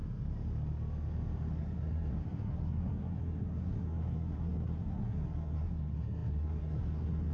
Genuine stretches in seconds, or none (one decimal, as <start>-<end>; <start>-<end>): 0.0-1.5

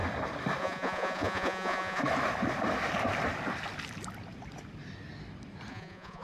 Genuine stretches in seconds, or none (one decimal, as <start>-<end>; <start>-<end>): 0.0-0.6; 2.0-5.7

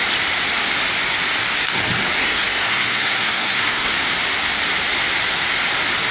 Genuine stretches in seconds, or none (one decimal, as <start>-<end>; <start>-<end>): 0.0-2.2; 3.9-6.1

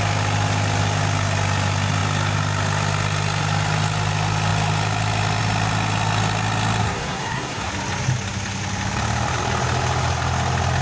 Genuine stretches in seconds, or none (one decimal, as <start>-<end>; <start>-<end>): 0.0-6.8; 7.7-10.8

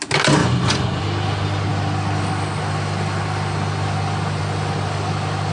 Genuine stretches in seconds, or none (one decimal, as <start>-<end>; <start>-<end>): 0.0-0.4; 1.0-5.5